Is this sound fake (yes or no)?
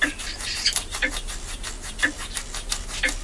no